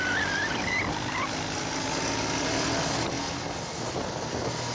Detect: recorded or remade recorded